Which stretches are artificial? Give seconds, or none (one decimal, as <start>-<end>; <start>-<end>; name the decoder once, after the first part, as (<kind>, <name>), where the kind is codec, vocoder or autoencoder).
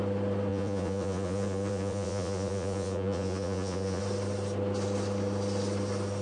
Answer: 0.5-4.0 (vocoder, Vocos)